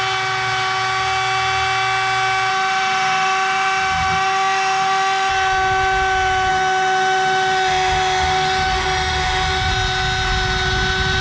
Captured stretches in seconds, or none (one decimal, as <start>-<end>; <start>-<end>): 0.0-2.5; 5.3-6.5; 9.7-11.2